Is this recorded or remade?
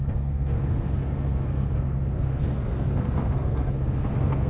remade